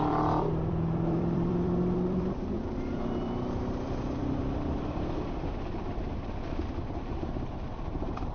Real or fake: fake